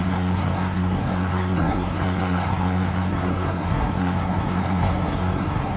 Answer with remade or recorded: remade